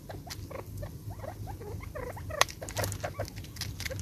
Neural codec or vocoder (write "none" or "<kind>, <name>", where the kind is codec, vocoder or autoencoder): none